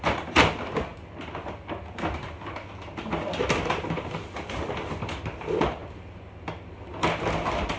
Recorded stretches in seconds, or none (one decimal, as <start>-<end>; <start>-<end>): 0.0-7.8